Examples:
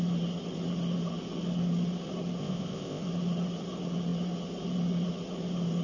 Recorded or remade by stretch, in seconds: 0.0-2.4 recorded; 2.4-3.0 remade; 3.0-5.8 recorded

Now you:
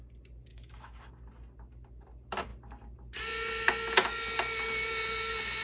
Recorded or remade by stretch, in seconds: 0.0-0.5 recorded; 0.5-1.1 remade; 1.1-5.6 recorded

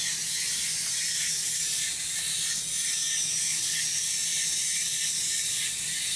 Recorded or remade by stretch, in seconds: 0.0-6.2 recorded